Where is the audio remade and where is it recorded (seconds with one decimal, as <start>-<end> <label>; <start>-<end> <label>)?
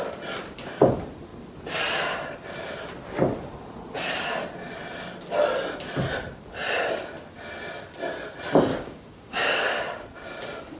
0.0-8.7 recorded; 8.7-9.6 remade; 9.6-10.8 recorded